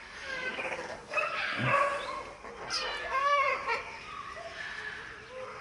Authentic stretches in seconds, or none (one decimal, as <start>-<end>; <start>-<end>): 1.7-3.0; 3.7-5.6